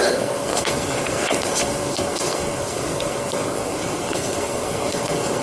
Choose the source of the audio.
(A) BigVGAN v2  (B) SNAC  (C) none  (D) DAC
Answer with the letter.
B